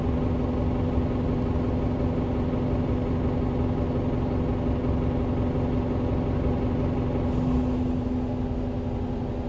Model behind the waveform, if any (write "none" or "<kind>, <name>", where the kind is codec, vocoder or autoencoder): none